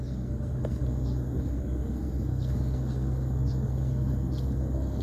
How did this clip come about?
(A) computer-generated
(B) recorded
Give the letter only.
A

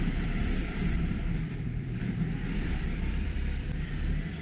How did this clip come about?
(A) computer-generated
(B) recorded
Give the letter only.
A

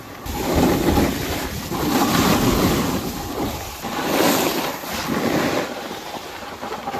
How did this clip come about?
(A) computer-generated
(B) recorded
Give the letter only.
B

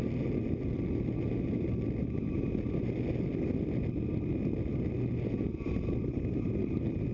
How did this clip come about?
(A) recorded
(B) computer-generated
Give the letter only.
A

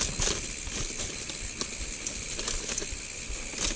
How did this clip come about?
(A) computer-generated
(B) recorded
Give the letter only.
B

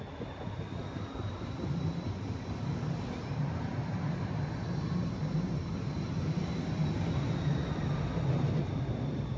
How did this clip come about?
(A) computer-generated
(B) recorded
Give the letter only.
B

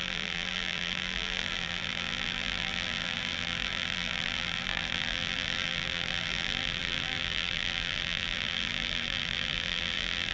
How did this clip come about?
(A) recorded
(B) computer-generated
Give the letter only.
B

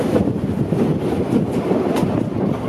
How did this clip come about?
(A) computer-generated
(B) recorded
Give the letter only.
B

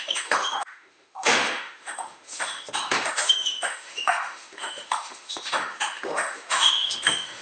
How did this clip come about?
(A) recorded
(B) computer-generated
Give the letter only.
B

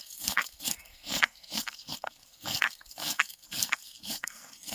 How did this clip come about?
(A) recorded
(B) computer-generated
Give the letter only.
B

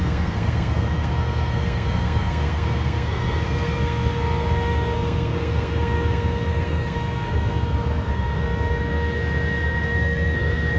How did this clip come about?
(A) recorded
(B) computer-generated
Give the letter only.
B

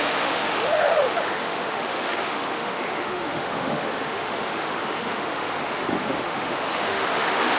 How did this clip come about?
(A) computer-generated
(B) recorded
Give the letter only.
A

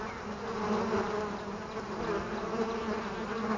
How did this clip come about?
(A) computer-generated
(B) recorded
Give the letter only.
B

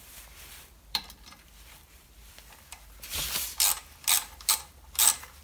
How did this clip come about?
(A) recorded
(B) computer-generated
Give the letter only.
B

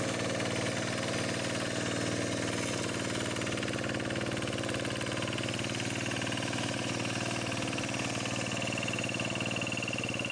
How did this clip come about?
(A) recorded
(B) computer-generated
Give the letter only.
A